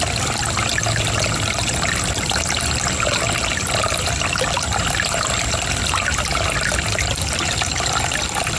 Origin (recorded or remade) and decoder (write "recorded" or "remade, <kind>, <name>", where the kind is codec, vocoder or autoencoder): recorded